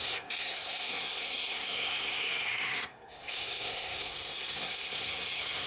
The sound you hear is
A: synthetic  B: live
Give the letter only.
A